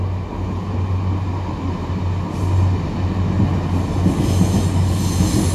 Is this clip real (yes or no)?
yes